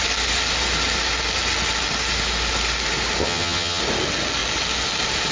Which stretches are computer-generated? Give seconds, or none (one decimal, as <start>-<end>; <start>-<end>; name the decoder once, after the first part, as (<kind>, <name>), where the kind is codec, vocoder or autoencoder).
3.2-3.8 (vocoder, HiFi-GAN)